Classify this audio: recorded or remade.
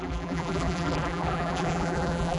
remade